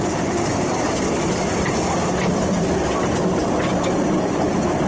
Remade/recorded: recorded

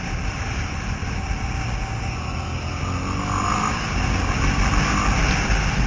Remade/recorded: recorded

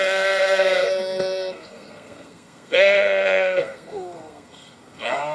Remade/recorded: remade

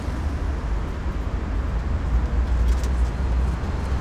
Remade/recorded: recorded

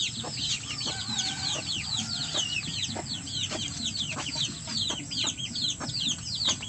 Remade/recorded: recorded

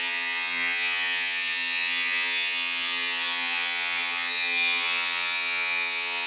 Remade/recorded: remade